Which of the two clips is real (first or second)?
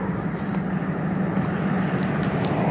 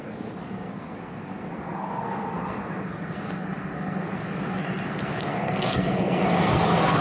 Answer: first